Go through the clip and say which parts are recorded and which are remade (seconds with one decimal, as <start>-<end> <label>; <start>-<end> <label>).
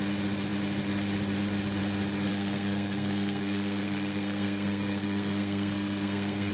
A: 0.0-2.3 recorded; 2.3-6.5 remade